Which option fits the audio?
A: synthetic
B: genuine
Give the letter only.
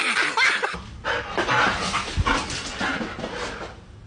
B